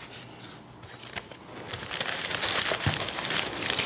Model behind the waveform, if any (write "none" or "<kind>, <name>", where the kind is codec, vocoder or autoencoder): none